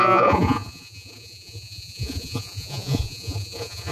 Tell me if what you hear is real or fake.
fake